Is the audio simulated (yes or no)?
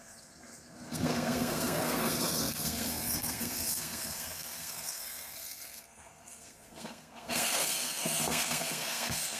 yes